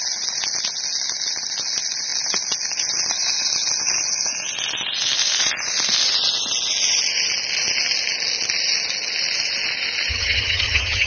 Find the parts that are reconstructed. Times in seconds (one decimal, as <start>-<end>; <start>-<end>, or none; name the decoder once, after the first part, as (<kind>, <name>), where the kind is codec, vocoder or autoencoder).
10.1-11.1 (vocoder, HiFi-GAN)